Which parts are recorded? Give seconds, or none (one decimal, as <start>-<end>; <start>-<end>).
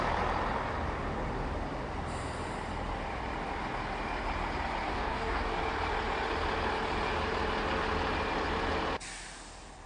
0.0-4.9; 5.6-9.9